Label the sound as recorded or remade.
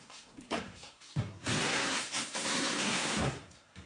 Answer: remade